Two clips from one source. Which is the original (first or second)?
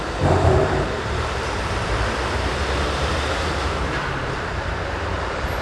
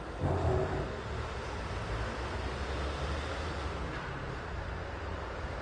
second